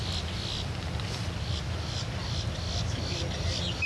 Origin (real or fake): real